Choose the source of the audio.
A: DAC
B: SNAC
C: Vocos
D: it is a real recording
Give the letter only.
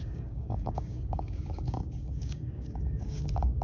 A